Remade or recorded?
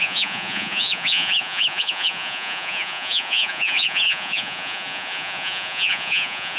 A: remade